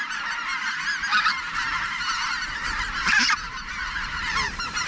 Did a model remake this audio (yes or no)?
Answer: yes